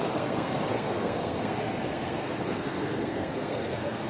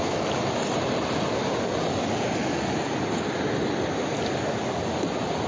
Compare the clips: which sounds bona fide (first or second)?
second